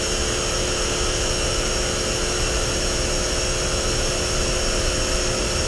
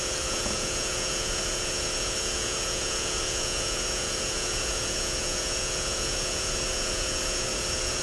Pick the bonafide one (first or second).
first